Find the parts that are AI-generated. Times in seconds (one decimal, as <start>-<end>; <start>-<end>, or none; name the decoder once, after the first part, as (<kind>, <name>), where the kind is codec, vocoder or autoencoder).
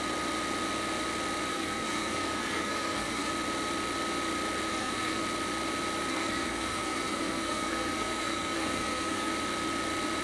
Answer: 1.5-3.3 (codec, SNAC); 4.7-5.2; 6.1-9.3